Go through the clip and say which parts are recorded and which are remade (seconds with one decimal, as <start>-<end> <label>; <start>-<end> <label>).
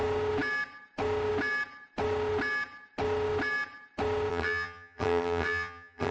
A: 0.0-4.3 recorded; 4.3-6.1 remade